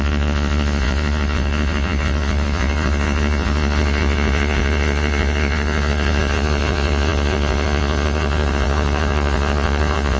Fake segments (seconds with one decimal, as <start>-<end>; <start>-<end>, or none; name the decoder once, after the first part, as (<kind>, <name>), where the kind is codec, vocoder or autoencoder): 0.0-10.2 (vocoder, Vocos)